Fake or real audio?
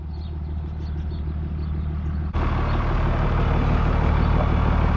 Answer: real